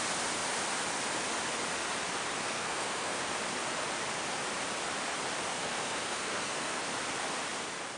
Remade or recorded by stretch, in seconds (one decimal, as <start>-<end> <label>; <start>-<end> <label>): 0.0-2.4 recorded; 2.4-3.2 remade; 3.2-5.5 recorded; 5.5-6.8 remade; 6.8-8.0 recorded